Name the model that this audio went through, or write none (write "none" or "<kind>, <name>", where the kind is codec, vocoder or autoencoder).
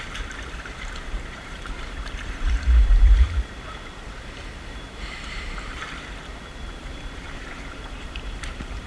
vocoder, BigVGAN v2